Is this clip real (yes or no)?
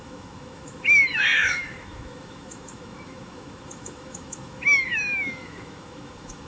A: no